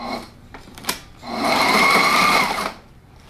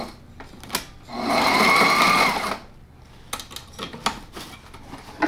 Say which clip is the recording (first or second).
second